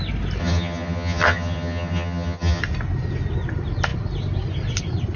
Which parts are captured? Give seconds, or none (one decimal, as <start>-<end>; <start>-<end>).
0.0-0.4; 2.6-5.2